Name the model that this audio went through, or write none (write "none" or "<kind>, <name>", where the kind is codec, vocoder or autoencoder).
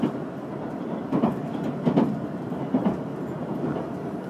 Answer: none